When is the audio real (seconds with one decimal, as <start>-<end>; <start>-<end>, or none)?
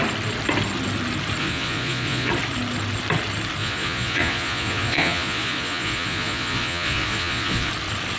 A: 0.0-1.4; 2.3-3.6; 7.7-8.2